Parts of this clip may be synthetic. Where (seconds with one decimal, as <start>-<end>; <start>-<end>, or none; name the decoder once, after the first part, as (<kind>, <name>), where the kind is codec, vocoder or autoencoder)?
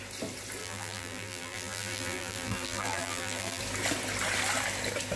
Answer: 0.6-3.6 (vocoder, BigVGAN v2)